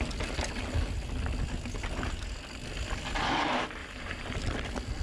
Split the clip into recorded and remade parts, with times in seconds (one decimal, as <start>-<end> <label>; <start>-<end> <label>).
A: 0.0-3.8 recorded; 3.8-4.3 remade; 4.3-5.0 recorded